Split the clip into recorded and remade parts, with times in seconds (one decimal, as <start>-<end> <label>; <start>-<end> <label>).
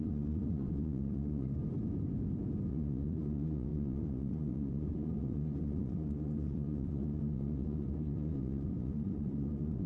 0.0-1.6 remade; 1.6-2.7 recorded; 2.7-9.9 remade